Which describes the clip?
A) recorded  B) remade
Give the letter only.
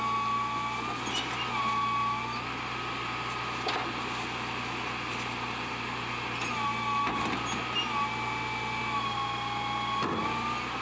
A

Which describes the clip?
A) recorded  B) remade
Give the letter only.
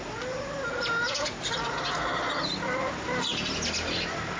A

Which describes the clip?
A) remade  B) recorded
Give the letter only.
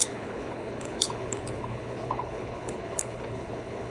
A